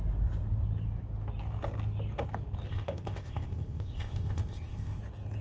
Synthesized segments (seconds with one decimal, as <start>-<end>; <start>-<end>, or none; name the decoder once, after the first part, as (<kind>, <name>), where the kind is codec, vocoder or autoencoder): 2.7-5.0 (codec, ZipCodec)